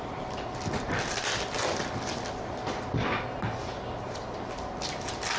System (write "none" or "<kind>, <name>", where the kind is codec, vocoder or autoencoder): none